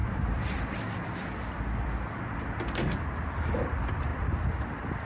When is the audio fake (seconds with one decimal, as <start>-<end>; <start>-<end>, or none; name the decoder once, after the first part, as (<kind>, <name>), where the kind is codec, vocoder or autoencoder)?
0.0-5.1 (vocoder, BigVGAN v2)